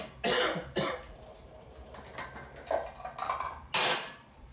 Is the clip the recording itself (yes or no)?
yes